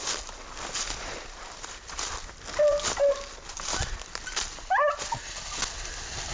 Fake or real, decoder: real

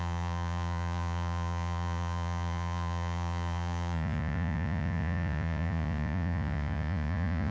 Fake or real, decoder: fake, vocoder, Vocos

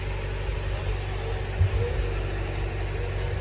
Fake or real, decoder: real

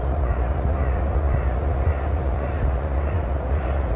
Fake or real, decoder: fake, vocoder, Vocos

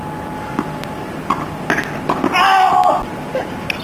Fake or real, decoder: real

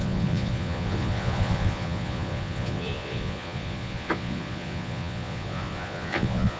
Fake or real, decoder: fake, vocoder, Vocos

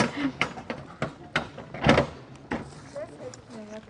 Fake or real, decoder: real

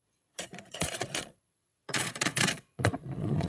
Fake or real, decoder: fake, vocoder, Vocos